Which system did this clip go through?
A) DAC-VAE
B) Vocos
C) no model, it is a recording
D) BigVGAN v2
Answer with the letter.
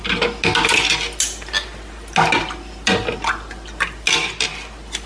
C